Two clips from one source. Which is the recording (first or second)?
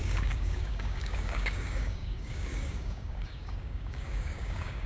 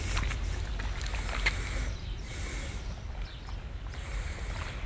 second